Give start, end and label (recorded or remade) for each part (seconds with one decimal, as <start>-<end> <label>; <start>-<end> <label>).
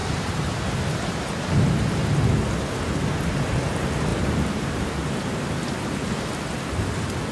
0.0-1.2 remade; 1.2-4.1 recorded; 4.1-5.4 remade; 5.4-7.3 recorded